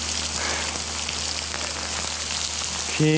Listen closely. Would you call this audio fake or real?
real